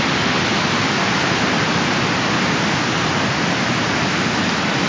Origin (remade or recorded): recorded